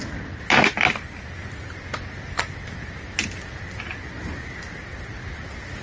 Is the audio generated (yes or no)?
no